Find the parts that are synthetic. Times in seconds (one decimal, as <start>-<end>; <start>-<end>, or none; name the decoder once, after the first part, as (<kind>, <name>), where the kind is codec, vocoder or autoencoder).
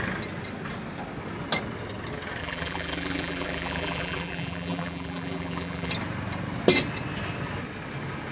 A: 2.4-5.9 (vocoder, BigVGAN v2)